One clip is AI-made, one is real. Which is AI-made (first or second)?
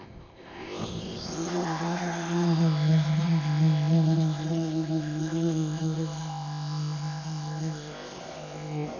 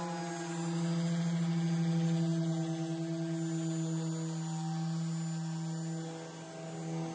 first